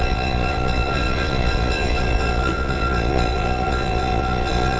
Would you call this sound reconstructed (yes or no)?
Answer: yes